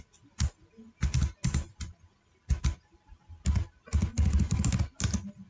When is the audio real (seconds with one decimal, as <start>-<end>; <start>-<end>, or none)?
0.0-5.5